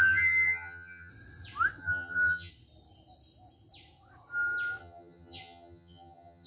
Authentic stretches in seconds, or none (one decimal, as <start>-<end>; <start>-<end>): 1.1-1.8; 2.5-4.8